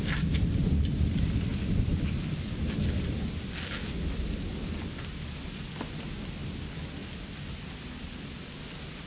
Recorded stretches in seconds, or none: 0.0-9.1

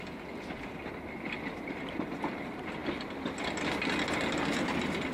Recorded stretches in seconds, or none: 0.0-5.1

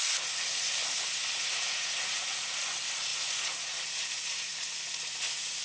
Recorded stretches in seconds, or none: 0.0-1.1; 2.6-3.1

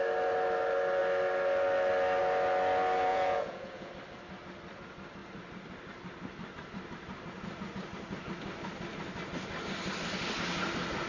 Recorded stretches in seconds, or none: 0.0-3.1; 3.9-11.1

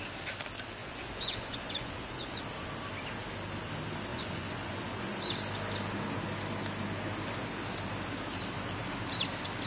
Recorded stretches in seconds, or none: 0.0-0.8; 2.4-4.1; 5.2-9.7

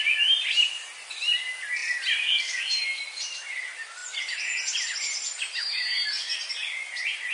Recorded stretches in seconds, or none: 0.0-7.3